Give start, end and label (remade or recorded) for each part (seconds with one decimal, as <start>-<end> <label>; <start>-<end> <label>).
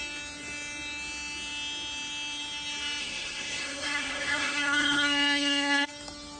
0.0-3.0 recorded; 3.0-5.9 remade; 5.9-6.4 recorded